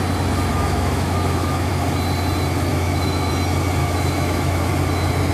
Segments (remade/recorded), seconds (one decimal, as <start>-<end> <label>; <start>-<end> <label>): 0.0-0.5 recorded; 0.5-1.7 remade; 1.7-2.7 recorded; 2.7-3.3 remade; 3.3-3.8 recorded; 3.8-4.7 remade; 4.7-5.3 recorded

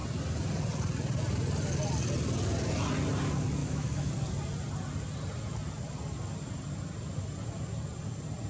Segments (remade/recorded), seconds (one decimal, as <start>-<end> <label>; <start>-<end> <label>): 0.0-3.6 recorded; 3.6-4.1 remade; 4.1-8.5 recorded

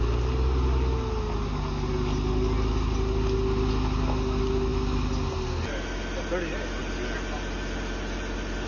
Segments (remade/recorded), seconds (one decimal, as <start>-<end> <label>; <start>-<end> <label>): 0.0-8.7 recorded

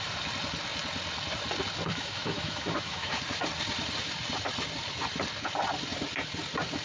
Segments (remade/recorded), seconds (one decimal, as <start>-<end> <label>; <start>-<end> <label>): 0.0-1.9 recorded; 1.9-3.2 remade; 3.2-6.8 recorded

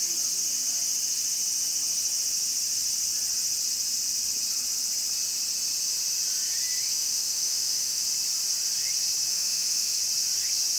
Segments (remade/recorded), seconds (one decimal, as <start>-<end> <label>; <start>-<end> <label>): 0.0-7.0 recorded; 7.0-8.0 remade; 8.0-9.3 recorded; 9.3-10.0 remade; 10.0-10.8 recorded

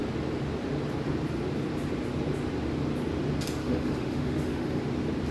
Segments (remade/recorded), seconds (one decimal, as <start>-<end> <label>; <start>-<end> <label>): 0.0-3.6 recorded; 3.6-4.8 remade; 4.8-5.3 recorded